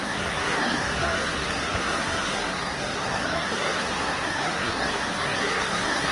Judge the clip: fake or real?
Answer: fake